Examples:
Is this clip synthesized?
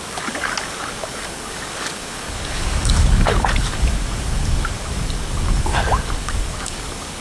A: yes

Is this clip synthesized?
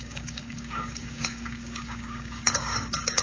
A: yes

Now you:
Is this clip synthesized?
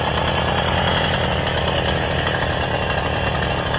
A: no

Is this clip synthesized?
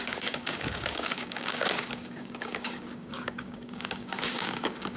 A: yes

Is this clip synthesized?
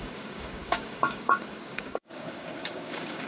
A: yes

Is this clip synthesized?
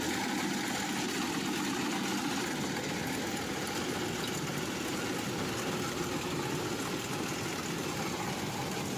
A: no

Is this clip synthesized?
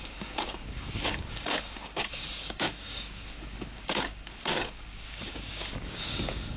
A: yes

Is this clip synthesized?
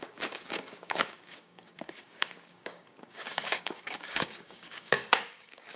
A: yes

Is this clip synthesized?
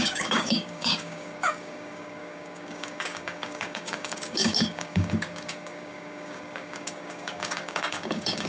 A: yes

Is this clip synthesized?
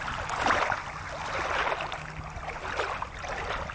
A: no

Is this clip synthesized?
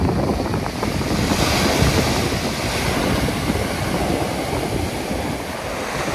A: no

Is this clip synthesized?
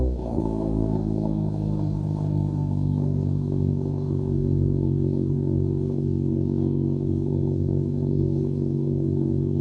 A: yes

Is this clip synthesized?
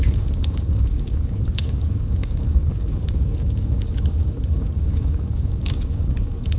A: yes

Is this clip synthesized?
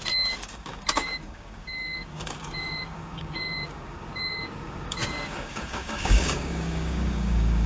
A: yes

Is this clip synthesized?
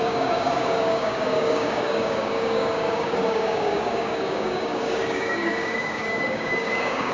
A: yes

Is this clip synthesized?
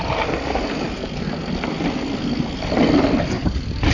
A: no